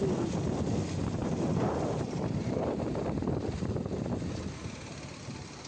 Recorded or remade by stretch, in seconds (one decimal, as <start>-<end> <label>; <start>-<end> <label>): 0.0-1.2 recorded; 1.2-4.6 remade; 4.6-5.7 recorded